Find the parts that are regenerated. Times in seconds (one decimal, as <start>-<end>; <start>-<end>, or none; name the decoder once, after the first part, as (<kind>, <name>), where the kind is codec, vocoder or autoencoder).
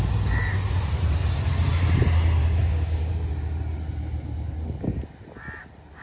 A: 2.4-3.1 (codec, DAC)